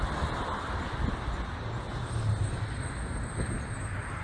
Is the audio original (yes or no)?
yes